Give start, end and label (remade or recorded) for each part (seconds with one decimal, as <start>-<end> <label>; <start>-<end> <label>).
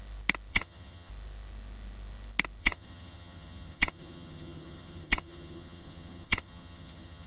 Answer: 0.0-0.5 recorded; 0.5-1.1 remade; 1.1-2.6 recorded; 2.6-7.3 remade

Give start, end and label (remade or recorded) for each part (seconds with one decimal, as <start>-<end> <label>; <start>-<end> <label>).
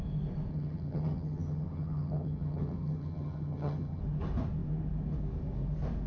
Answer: 0.0-0.5 recorded; 0.5-4.0 remade; 4.0-6.1 recorded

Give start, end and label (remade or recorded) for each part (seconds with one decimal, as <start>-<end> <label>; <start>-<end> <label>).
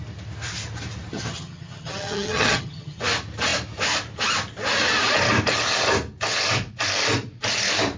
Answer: 0.0-1.1 recorded; 1.1-3.0 remade; 3.0-8.0 recorded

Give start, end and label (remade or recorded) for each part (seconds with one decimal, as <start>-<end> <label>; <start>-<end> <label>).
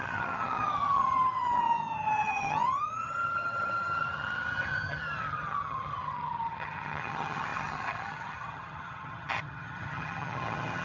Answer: 0.0-10.8 remade